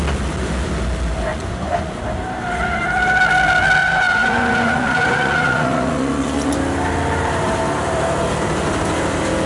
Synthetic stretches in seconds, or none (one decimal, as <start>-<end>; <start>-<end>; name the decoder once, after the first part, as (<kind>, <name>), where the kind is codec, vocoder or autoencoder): 1.3-2.0 (vocoder, Vocos); 3.8-6.6